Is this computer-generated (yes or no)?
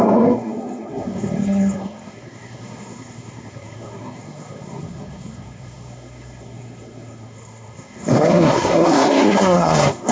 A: yes